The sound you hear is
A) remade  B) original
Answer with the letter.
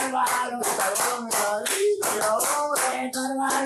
A